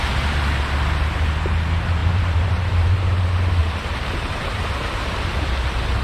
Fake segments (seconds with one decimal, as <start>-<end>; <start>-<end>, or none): 2.0-3.2; 3.6-5.1